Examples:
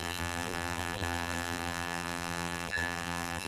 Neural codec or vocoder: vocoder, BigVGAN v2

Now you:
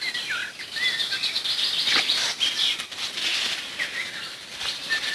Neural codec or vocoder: none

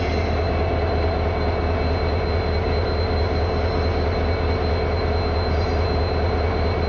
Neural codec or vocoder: none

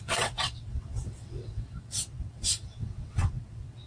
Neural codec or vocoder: vocoder, WaveNeXt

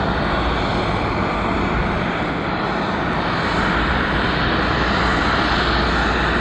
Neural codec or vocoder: none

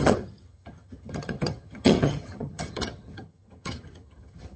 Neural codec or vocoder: vocoder, HiFi-GAN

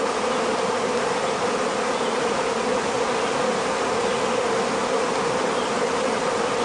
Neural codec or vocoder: none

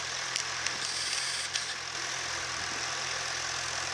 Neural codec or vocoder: none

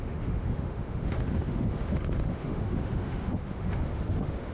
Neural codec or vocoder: autoencoder, DAC-VAE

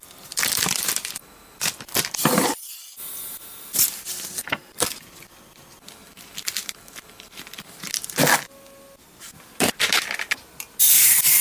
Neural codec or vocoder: none